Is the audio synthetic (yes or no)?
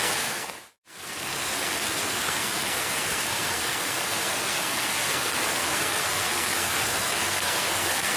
yes